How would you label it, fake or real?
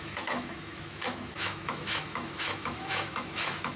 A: fake